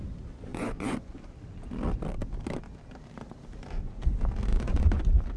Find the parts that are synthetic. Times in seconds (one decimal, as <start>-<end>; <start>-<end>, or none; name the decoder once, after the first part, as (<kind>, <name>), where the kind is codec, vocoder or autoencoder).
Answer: 0.5-1.3 (vocoder, Vocos); 4.5-5.0